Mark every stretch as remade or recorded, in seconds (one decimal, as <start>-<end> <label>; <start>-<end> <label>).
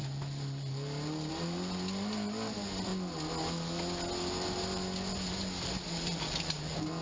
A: 0.0-7.0 recorded